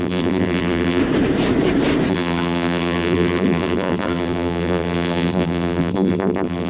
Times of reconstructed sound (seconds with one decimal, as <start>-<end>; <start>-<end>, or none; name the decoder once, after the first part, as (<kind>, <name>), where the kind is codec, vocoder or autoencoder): 0.0-1.0 (vocoder, BigVGAN v2); 2.1-6.7